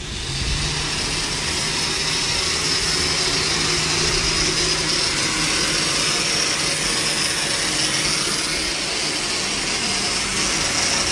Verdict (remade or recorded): recorded